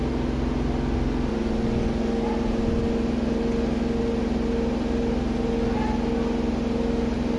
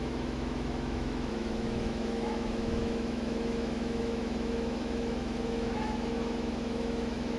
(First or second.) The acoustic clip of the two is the first